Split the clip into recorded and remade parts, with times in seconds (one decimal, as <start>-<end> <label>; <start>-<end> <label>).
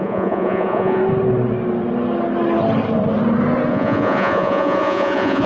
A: 0.0-1.0 remade; 1.0-3.7 recorded; 3.7-5.5 remade